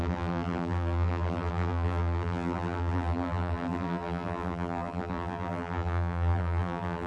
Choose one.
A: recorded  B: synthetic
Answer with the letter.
B